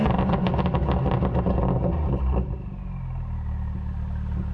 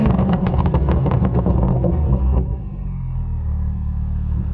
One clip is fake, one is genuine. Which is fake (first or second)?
second